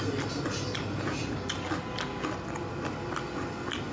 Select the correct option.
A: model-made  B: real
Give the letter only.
B